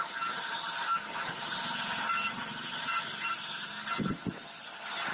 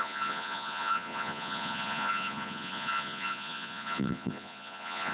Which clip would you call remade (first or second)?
second